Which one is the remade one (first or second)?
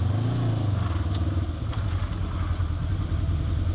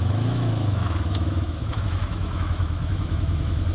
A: second